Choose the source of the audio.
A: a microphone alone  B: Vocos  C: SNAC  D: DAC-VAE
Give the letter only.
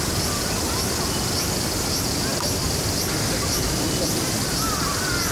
A